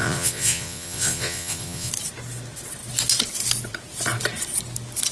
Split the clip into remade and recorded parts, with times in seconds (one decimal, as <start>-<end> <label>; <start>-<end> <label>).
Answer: 0.0-1.9 remade; 1.9-5.1 recorded